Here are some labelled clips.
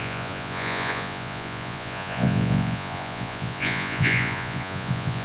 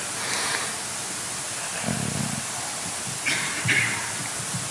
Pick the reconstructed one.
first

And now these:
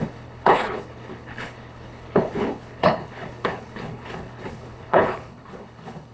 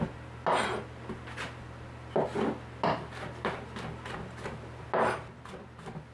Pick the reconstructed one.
first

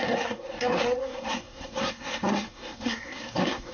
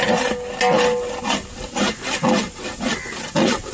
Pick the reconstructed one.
first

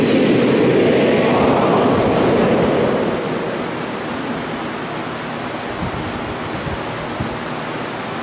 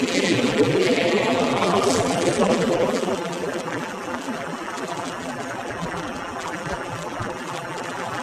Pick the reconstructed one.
second